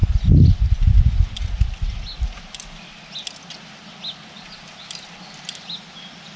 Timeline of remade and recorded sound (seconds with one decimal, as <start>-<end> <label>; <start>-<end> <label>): 0.0-6.4 recorded